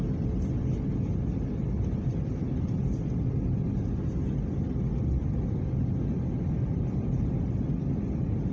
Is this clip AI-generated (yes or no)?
no